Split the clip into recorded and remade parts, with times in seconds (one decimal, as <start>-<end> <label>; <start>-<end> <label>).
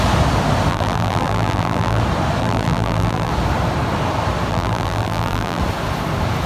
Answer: 0.0-0.7 recorded; 0.7-2.0 remade; 2.0-2.4 recorded; 2.4-3.3 remade; 3.3-4.5 recorded; 4.5-5.6 remade; 5.6-6.5 recorded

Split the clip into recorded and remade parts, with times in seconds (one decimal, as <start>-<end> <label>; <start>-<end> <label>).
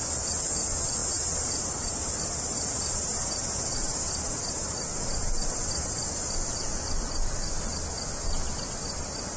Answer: 0.0-9.4 recorded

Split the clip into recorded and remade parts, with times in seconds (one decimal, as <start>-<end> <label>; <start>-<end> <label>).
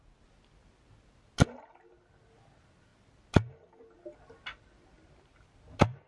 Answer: 0.0-6.1 recorded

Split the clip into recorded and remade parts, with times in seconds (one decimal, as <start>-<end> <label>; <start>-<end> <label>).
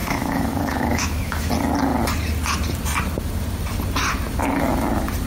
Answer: 0.0-1.5 remade; 1.5-5.3 recorded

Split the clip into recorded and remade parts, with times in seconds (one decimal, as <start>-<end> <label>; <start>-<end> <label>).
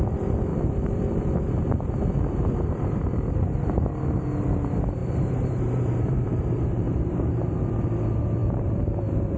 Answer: 0.0-0.5 recorded; 0.5-3.8 remade; 3.8-5.0 recorded; 5.0-7.7 remade; 7.7-8.4 recorded; 8.4-9.4 remade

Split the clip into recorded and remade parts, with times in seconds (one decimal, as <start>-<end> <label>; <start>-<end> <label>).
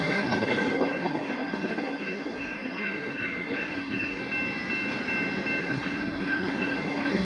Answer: 0.0-4.2 remade; 4.2-5.6 recorded; 5.6-7.2 remade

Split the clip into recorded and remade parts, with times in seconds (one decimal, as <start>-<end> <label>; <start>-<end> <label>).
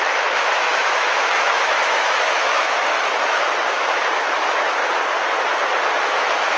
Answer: 0.0-4.8 remade; 4.8-6.0 recorded; 6.0-6.6 remade